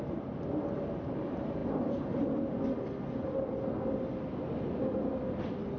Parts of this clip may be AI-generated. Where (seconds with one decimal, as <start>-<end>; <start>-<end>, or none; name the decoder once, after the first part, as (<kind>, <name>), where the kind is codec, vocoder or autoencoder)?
none